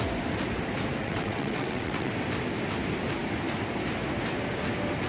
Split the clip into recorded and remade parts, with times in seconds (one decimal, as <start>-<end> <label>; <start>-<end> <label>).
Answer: 0.0-1.0 recorded; 1.0-2.1 remade; 2.1-5.1 recorded